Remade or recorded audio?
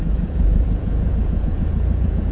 remade